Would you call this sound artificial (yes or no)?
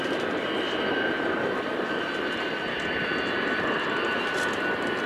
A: no